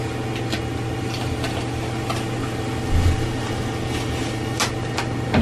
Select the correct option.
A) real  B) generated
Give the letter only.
A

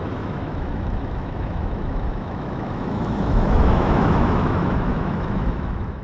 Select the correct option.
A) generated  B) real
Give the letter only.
A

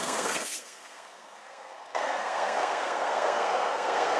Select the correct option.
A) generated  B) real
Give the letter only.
A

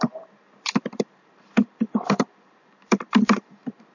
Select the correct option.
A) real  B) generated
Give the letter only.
B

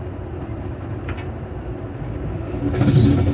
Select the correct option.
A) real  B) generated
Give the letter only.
A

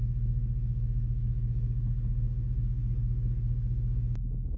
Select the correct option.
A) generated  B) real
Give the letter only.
A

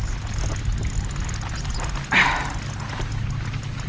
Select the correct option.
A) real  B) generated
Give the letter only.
A